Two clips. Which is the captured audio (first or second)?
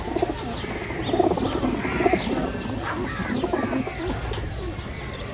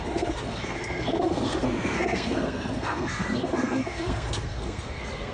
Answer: first